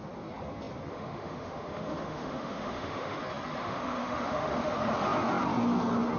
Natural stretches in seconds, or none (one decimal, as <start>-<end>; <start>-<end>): 0.0-0.9; 3.2-3.6; 4.7-6.2

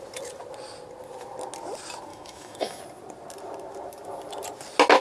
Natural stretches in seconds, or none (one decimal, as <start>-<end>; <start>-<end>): 0.0-2.1; 2.8-5.0

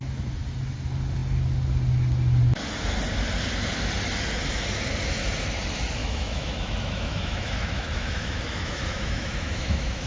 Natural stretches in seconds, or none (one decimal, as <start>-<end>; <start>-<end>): 0.0-6.0

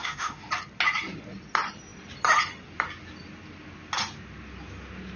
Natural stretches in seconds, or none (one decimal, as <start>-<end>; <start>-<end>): 0.5-5.2

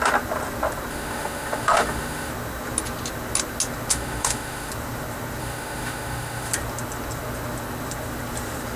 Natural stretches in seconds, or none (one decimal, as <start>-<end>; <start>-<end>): 0.0-0.9; 2.3-3.9; 4.7-5.4; 6.5-8.8